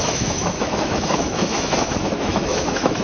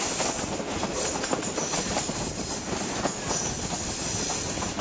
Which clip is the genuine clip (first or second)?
second